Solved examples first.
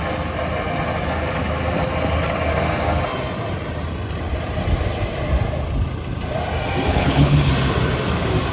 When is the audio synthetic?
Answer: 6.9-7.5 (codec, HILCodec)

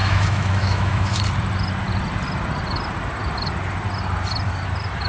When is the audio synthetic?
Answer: 0.0-1.2 (autoencoder, DAC-VAE)

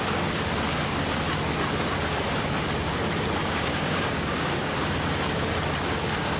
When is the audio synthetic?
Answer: 3.4-5.1 (codec, DAC)

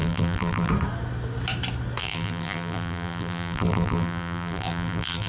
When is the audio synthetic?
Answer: 0.0-0.7 (vocoder, BigVGAN v2); 2.0-5.3

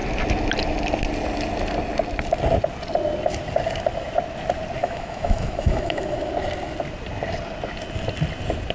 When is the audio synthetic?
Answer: 4.8-6.3 (autoencoder, DAC-VAE)

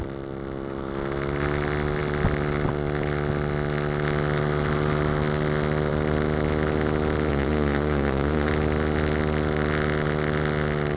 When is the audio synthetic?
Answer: 7.3-8.5 (vocoder, Vocos)

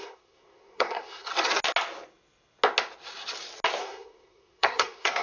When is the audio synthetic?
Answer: 0.0-1.3 (codec, SNAC); 3.8-5.2

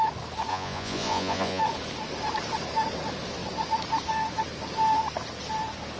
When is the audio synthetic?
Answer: 0.5-1.6 (vocoder, Vocos)